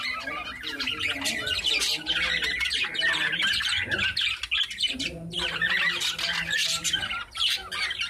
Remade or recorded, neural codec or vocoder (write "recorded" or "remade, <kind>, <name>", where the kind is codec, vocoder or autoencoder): recorded